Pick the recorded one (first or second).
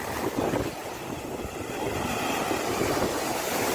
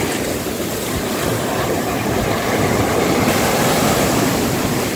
first